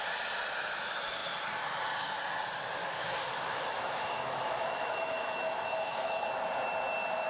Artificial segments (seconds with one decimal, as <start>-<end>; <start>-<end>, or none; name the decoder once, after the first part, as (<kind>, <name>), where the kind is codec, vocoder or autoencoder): 2.8-6.3 (autoencoder, DAC-VAE)

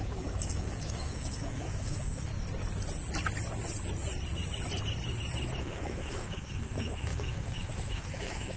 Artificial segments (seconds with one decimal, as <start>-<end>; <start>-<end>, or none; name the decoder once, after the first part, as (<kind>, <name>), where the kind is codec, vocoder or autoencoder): 0.0-2.3 (autoencoder, DAC-VAE); 5.6-8.6

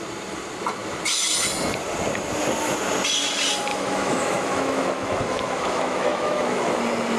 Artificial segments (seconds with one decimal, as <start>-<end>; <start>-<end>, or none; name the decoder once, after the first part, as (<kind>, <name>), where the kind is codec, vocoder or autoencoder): 3.7-6.8 (autoencoder, DAC-VAE)